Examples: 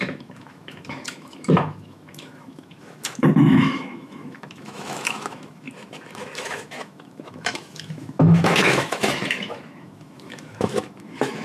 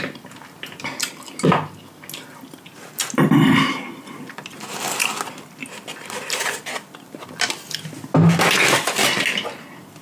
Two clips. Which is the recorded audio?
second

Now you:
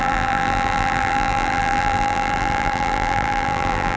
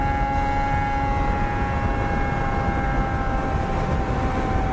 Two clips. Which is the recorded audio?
second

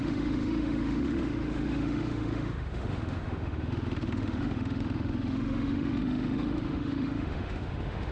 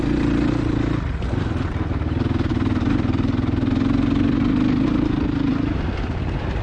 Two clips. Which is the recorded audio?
second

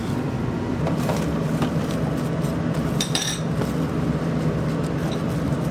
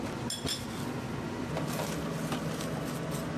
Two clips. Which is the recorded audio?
second